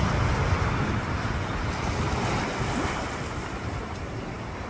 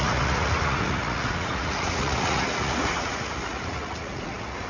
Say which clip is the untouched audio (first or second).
first